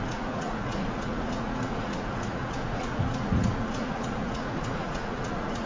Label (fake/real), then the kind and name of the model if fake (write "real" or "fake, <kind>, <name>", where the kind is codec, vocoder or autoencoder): fake, vocoder, Vocos